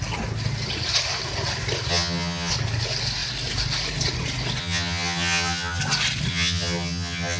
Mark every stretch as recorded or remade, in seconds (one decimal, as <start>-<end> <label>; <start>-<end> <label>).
0.0-1.9 recorded; 1.9-2.5 remade; 2.5-4.6 recorded; 4.6-5.8 remade; 5.8-6.3 recorded; 6.3-7.4 remade